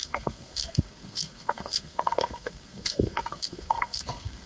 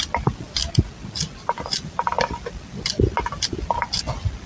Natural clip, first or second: second